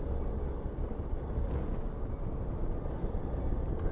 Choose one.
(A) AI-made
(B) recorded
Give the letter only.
B